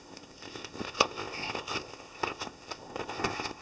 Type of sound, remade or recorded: remade